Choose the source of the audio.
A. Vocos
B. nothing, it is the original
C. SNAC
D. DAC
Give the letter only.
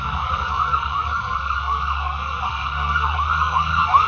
C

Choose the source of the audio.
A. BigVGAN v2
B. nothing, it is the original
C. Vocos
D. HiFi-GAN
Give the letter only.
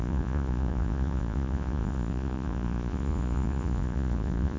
C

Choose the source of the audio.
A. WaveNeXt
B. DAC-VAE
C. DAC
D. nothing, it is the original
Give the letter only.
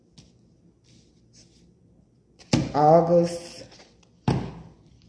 D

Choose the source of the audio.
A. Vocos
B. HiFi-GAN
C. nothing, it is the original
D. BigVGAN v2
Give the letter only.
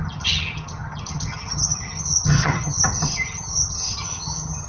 B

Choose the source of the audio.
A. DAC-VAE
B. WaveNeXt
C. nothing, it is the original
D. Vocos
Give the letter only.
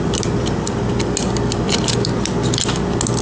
C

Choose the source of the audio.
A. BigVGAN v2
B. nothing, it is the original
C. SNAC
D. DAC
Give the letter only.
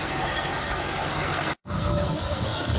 C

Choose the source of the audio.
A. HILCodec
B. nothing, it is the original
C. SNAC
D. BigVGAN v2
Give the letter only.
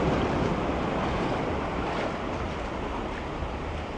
B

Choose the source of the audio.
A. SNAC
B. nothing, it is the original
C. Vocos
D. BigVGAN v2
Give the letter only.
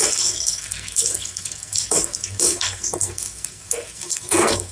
A